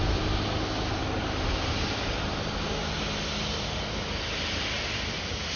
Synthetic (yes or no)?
no